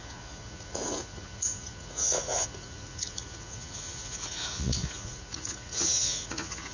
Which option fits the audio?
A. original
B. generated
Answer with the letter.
B